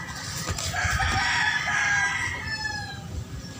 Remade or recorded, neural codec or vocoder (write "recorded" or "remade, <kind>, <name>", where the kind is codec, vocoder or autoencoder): recorded